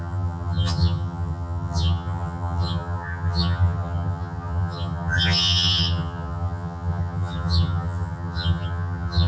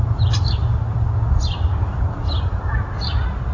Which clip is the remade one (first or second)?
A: first